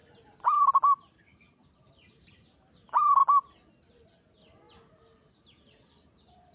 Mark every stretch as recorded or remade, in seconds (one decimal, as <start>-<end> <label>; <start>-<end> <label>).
0.0-6.5 recorded